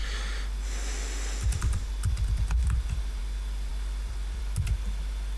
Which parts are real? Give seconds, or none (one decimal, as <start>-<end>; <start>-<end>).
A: 0.0-3.7; 4.4-5.4